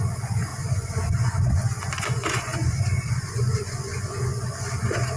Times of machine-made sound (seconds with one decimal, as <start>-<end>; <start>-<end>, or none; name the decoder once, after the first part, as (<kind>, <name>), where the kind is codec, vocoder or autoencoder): 0.0-5.2 (vocoder, Vocos)